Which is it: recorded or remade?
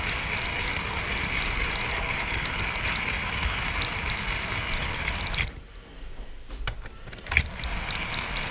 recorded